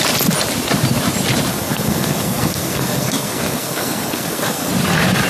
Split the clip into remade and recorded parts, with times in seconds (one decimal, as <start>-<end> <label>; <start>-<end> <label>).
0.0-1.5 recorded; 1.5-4.7 remade; 4.7-5.3 recorded

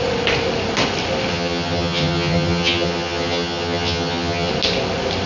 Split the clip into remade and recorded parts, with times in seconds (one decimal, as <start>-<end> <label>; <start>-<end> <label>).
0.0-1.3 recorded; 1.3-4.5 remade; 4.5-5.3 recorded

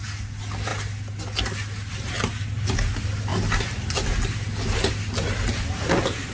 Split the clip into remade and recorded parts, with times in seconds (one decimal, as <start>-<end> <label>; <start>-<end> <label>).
0.0-6.3 recorded

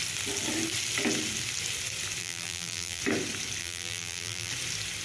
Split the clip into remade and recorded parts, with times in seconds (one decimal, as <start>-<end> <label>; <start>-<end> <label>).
0.0-2.2 recorded; 2.2-3.0 remade; 3.0-3.6 recorded; 3.6-4.5 remade; 4.5-5.0 recorded